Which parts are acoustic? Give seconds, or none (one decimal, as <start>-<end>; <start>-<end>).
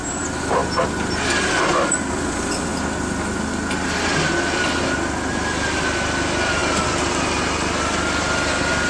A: 0.0-8.9